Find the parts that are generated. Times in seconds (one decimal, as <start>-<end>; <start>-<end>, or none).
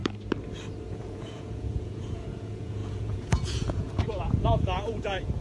0.9-5.4